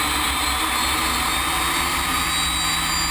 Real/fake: real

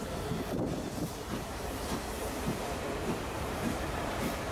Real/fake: fake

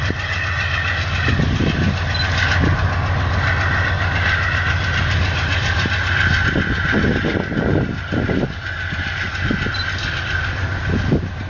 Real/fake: real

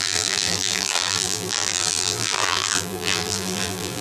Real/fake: fake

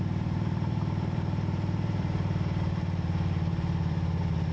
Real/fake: fake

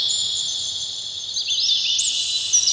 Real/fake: real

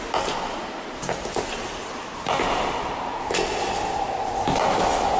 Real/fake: real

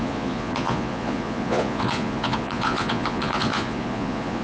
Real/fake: fake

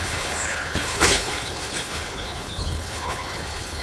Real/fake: fake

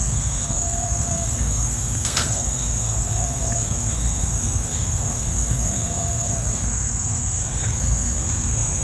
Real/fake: fake